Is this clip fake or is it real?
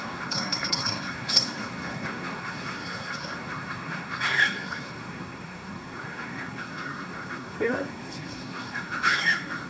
fake